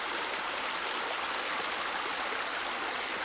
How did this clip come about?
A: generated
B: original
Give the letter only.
B